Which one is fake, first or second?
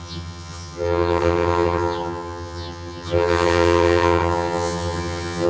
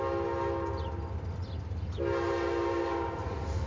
first